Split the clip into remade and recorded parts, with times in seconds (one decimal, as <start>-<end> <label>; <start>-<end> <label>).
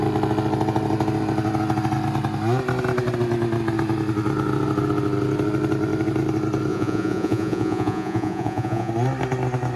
0.0-6.7 recorded; 6.7-8.9 remade; 8.9-9.8 recorded